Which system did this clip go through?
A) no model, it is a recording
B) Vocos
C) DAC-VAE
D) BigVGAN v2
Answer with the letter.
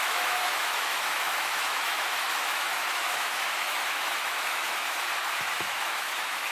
C